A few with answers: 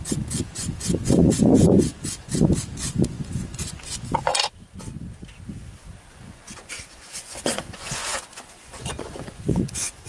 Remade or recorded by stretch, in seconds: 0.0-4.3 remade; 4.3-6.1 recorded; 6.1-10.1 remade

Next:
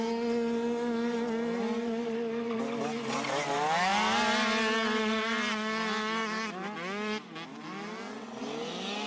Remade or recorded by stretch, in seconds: 0.0-9.1 recorded

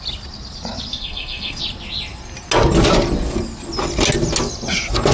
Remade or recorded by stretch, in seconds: 0.0-0.9 recorded; 0.9-1.6 remade; 1.6-5.1 recorded

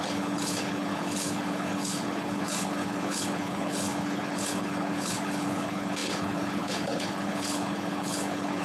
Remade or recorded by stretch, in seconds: 0.0-8.6 remade